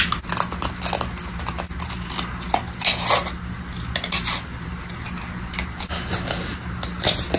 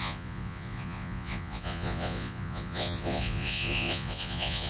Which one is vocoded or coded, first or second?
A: second